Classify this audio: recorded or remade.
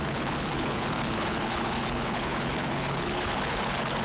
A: remade